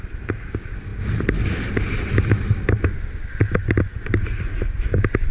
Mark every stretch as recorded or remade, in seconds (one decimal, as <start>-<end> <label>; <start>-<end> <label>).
0.0-5.3 recorded